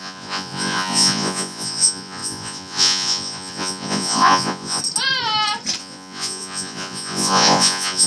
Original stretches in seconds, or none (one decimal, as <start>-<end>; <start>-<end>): 4.8-5.8